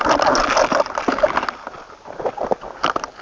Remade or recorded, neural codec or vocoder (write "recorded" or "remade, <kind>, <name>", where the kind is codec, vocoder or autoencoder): recorded